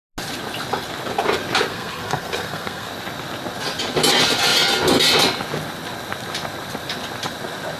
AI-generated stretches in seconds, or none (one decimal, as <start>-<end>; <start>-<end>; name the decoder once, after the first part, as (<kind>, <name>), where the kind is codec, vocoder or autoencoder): 1.7-2.9 (codec, SNAC)